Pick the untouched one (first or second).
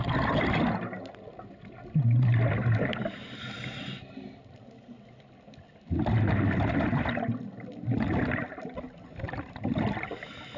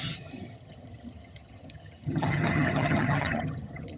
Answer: first